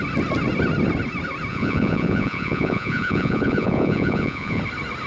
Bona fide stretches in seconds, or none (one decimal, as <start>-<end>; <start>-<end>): 0.0-1.5; 4.6-5.1